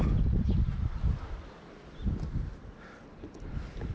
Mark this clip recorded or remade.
recorded